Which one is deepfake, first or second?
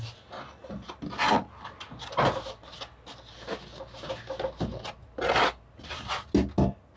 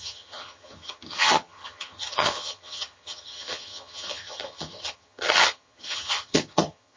second